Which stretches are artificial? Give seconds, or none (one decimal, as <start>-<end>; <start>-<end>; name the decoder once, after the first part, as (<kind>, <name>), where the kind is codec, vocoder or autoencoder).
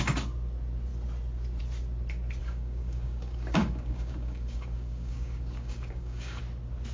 2.4-6.4 (codec, DAC)